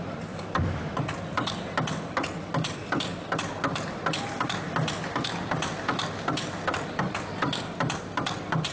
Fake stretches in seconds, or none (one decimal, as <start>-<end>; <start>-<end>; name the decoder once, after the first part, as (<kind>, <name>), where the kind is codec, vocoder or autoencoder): none